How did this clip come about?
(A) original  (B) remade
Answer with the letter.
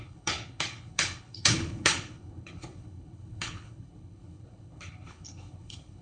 B